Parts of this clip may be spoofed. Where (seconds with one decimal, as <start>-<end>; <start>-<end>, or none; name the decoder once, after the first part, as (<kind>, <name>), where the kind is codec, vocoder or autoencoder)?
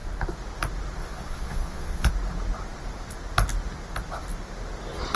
1.0-2.1 (vocoder, Vocos)